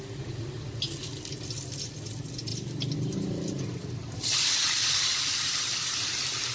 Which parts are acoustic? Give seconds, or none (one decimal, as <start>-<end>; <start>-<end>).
0.0-6.5